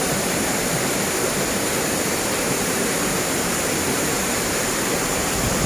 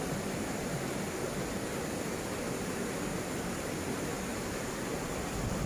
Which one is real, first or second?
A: second